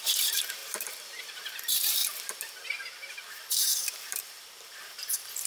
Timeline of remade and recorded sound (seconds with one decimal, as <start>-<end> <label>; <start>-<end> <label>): 0.0-2.0 remade; 2.0-3.3 recorded; 3.3-5.5 remade